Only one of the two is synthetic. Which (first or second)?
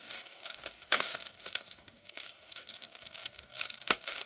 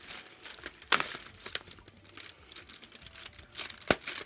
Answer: first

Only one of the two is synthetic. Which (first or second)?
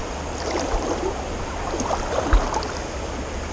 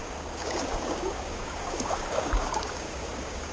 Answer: second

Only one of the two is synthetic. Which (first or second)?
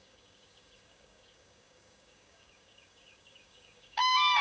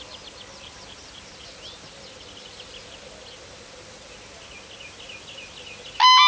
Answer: first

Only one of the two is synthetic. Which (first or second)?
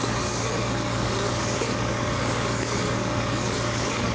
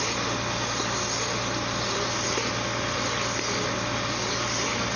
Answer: first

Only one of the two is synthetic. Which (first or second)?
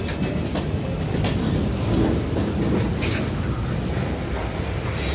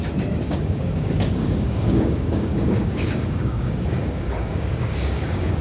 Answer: second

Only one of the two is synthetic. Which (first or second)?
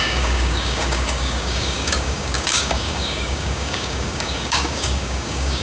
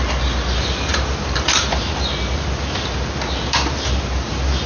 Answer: first